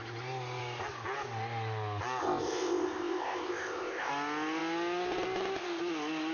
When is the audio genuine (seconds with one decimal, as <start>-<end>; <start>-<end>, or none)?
0.0-2.2; 4.1-6.3